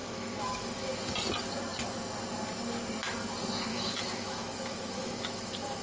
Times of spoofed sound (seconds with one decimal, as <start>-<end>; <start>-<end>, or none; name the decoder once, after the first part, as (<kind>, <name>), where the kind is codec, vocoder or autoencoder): 0.0-0.9 (autoencoder, DAC-VAE); 3.7-5.8